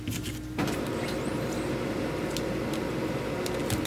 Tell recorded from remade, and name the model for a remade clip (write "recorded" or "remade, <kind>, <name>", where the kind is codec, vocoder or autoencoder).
recorded